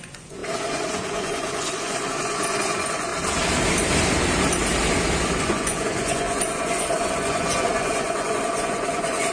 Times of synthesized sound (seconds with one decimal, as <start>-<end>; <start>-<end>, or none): 0.0-3.1; 5.4-9.3